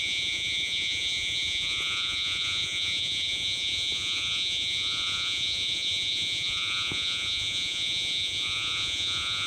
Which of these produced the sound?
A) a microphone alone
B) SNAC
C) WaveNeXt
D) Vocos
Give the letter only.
D